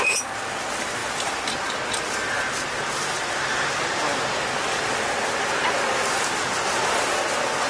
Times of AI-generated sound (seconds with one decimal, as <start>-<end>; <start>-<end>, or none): none